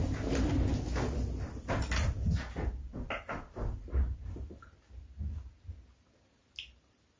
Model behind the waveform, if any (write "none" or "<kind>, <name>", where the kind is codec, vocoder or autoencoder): none